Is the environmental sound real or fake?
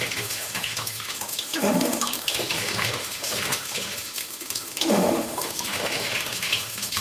fake